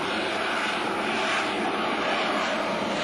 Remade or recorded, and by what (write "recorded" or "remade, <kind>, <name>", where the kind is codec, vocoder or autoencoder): recorded